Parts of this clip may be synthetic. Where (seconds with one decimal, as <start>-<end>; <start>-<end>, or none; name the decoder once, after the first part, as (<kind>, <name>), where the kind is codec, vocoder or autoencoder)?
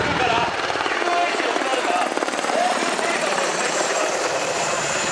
1.7-5.1 (vocoder, BigVGAN v2)